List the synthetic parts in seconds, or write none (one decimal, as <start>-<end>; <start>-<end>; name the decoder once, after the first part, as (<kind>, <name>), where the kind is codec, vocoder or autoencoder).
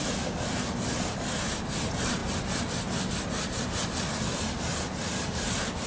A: none